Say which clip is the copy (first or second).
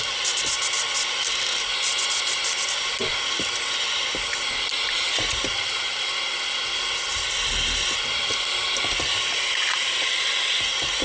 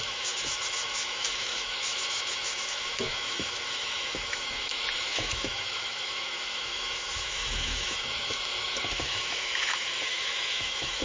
second